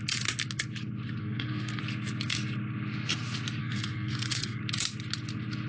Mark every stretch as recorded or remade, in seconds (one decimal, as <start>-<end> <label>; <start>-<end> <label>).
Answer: 0.0-1.2 recorded; 1.2-1.8 remade; 1.8-3.6 recorded; 3.6-4.6 remade; 4.6-5.7 recorded